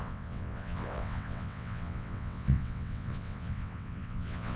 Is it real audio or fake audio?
fake